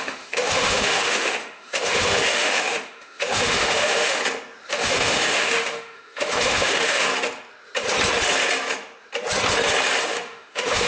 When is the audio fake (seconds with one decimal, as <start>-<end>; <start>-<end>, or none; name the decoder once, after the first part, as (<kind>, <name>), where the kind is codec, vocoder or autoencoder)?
0.0-4.2 (autoencoder, DAC-VAE); 4.7-7.1; 10.0-10.9